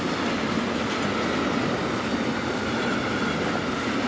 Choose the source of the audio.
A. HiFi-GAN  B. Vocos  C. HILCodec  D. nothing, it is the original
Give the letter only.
D